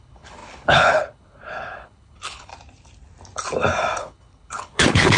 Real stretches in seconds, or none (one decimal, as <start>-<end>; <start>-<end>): 2.5-4.0